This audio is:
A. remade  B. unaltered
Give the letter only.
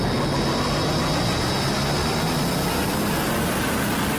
B